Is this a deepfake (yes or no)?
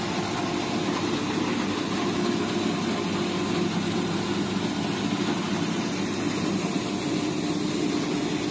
no